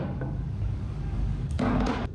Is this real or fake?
fake